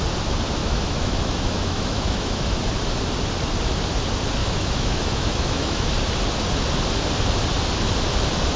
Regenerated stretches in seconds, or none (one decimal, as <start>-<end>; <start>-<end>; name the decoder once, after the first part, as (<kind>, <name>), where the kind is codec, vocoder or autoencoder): 0.6-2.6 (autoencoder, DAC-VAE); 4.4-5.9